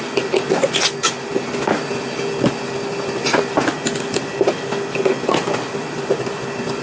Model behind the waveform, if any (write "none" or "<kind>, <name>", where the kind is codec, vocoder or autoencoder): none